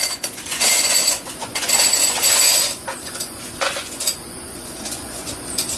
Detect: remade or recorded remade